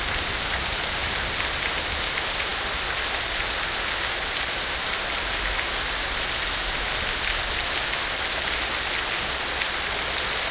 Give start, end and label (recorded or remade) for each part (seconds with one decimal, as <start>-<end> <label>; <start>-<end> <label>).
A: 0.0-10.5 recorded